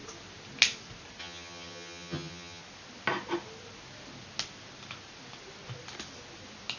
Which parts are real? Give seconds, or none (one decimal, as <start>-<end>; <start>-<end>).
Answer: 0.0-1.2; 2.6-6.8